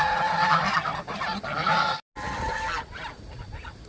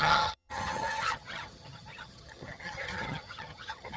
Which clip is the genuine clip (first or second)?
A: first